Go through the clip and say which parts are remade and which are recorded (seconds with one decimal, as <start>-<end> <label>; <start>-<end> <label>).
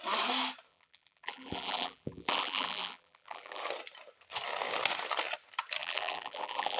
0.0-0.7 recorded; 0.7-3.6 remade; 3.6-5.8 recorded; 5.8-6.8 remade